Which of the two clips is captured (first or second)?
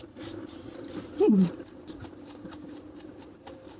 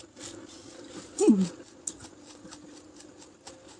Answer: second